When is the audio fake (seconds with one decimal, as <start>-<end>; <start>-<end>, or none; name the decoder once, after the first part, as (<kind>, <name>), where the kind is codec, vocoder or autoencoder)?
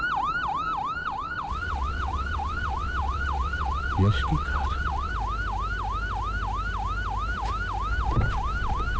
1.0-5.1 (vocoder, WaveNeXt)